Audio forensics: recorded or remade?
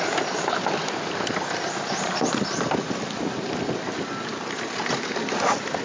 recorded